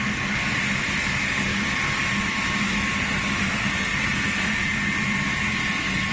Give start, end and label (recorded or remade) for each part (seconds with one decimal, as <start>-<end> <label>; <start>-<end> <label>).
0.0-6.1 recorded